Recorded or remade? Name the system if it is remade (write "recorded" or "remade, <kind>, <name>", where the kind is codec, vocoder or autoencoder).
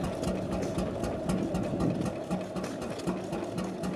recorded